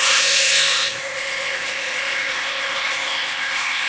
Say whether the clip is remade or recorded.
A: remade